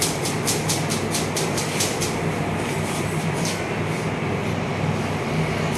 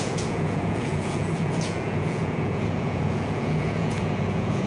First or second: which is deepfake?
second